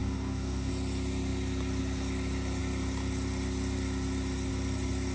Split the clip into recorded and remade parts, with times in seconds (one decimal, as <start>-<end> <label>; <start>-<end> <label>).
0.0-0.7 remade; 0.7-5.1 recorded